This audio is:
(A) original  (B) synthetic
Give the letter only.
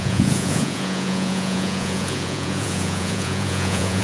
B